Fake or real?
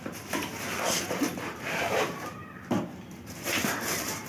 fake